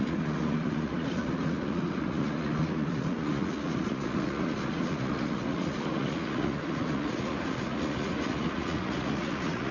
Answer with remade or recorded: remade